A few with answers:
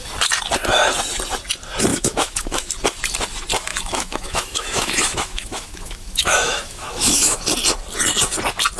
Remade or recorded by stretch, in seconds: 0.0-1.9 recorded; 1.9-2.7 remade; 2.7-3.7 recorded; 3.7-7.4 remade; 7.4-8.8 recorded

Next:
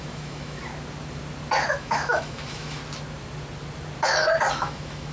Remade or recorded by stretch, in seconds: 0.0-0.7 remade; 0.7-1.7 recorded; 1.7-2.8 remade; 2.8-4.5 recorded; 4.5-5.1 remade

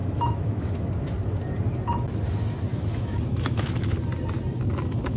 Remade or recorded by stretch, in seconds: 0.0-0.9 remade; 0.9-2.7 recorded; 2.7-3.9 remade; 3.9-5.2 recorded

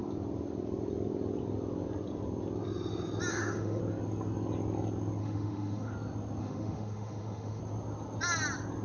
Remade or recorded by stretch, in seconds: 0.0-3.3 recorded; 3.3-3.8 remade; 3.8-5.2 recorded; 5.2-5.9 remade; 5.9-6.4 recorded; 6.4-7.6 remade; 7.6-8.8 recorded

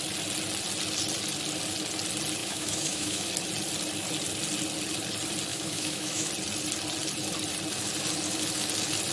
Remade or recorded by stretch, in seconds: 0.0-2.4 recorded; 2.4-3.3 remade; 3.3-5.5 recorded; 5.5-6.3 remade; 6.3-9.1 recorded

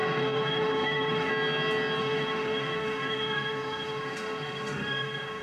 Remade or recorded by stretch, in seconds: 0.0-1.3 remade; 1.3-2.0 recorded; 2.0-5.4 remade

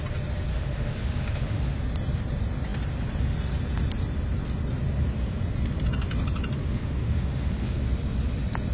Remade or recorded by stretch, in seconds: 0.0-0.5 recorded; 0.5-1.8 remade; 1.8-6.6 recorded; 6.6-7.8 remade; 7.8-8.7 recorded

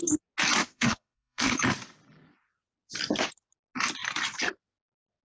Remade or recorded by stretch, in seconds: 0.0-0.6 recorded; 0.6-1.5 remade; 1.5-5.2 recorded